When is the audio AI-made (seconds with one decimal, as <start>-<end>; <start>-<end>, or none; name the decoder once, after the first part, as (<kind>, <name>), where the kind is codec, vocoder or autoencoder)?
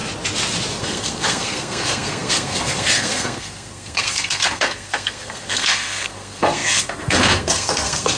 0.8-8.2 (codec, SNAC)